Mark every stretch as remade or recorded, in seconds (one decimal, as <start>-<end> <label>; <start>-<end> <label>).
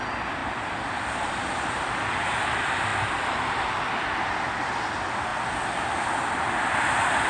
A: 0.0-0.4 recorded; 0.4-1.9 remade; 1.9-2.9 recorded; 2.9-4.3 remade; 4.3-5.3 recorded; 5.3-6.3 remade; 6.3-7.3 recorded